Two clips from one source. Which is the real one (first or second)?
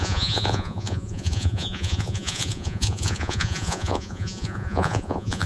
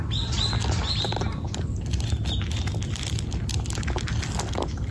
second